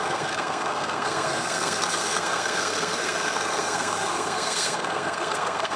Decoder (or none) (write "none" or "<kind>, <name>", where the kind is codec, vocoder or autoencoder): codec, SNAC